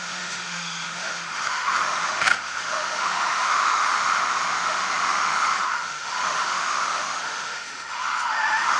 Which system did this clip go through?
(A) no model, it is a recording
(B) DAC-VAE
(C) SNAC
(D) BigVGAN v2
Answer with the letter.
B